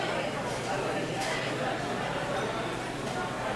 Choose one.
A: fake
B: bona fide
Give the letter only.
B